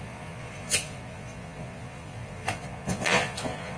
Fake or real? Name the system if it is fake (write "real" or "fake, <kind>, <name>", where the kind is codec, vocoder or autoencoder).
fake, vocoder, Vocos